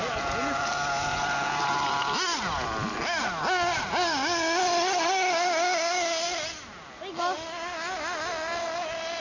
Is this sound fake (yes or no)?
no